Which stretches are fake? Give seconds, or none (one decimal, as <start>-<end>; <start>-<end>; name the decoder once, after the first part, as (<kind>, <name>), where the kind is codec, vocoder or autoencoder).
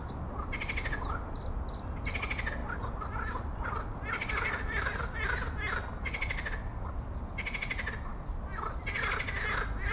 2.6-7.2 (vocoder, BigVGAN v2); 8.1-9.5